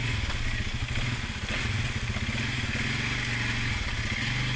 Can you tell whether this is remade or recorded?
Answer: recorded